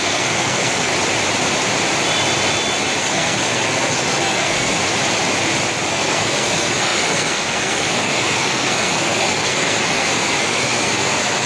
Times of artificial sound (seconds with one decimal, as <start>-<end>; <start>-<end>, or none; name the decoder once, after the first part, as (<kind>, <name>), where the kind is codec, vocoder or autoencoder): 0.0-0.9 (codec, SNAC); 3.0-4.8; 5.9-11.5